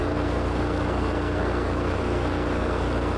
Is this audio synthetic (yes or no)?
yes